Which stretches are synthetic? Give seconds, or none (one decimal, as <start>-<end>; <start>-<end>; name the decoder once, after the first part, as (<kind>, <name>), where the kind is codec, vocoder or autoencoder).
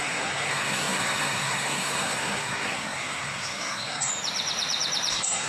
0.0-4.1 (codec, SNAC); 5.1-5.5